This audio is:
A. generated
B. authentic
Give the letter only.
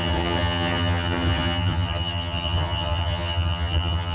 A